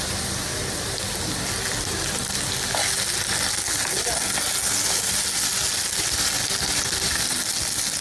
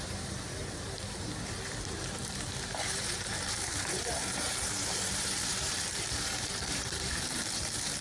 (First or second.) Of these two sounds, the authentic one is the first